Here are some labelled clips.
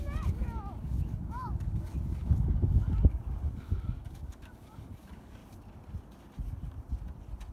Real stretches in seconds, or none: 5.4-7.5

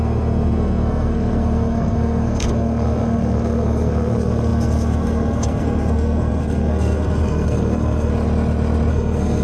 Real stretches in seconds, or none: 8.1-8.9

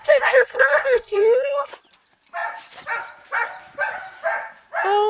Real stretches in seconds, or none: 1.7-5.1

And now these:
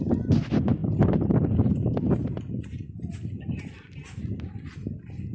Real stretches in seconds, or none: 0.0-5.3

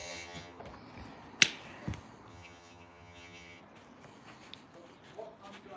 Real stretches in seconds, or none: 0.6-2.3; 3.6-5.8

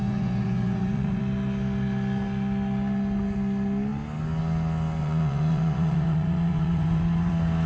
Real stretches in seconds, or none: 1.2-5.0; 7.3-7.7